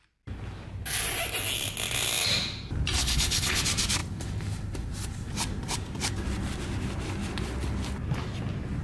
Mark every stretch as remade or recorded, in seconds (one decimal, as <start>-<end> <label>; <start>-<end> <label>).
0.0-3.0 recorded; 3.0-3.6 remade; 3.6-8.8 recorded